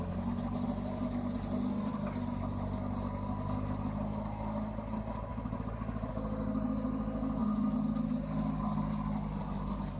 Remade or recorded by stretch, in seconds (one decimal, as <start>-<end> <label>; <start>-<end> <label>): 0.0-10.0 recorded